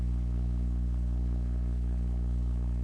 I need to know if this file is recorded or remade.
remade